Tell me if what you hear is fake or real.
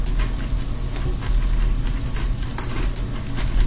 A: real